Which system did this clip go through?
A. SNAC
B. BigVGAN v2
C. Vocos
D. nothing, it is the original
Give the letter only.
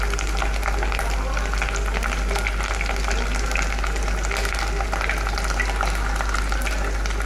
D